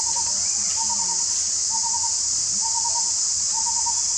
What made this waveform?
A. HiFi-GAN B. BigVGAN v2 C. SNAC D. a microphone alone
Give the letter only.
B